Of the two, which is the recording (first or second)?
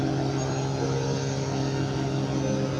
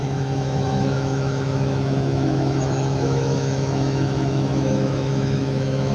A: first